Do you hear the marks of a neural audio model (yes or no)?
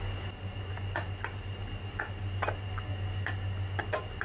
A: no